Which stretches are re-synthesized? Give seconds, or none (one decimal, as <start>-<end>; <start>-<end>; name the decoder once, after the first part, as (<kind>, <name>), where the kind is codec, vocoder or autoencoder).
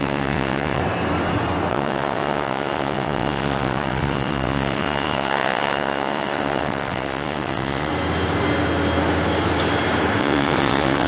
0.0-0.8 (vocoder, WaveNeXt); 1.7-7.9; 10.2-11.1